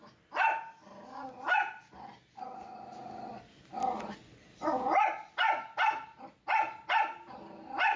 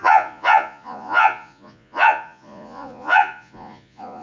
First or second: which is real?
first